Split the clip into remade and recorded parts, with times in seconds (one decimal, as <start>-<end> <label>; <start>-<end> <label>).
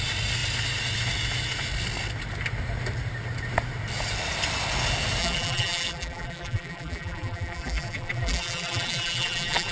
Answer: 0.0-5.2 recorded; 5.2-9.7 remade